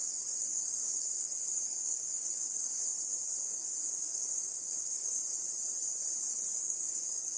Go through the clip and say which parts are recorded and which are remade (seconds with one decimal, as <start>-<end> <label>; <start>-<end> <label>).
0.0-2.9 remade; 2.9-3.4 recorded; 3.4-5.2 remade; 5.2-6.6 recorded; 6.6-7.4 remade